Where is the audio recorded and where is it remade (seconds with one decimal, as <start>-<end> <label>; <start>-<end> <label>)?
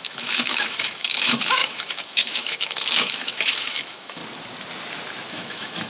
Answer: 0.0-4.2 remade; 4.2-5.3 recorded; 5.3-5.9 remade